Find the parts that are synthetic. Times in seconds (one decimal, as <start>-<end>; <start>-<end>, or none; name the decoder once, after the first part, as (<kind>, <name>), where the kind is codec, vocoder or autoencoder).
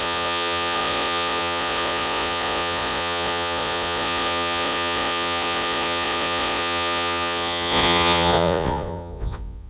0.0-9.7 (vocoder, Vocos)